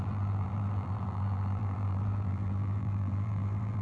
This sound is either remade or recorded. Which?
remade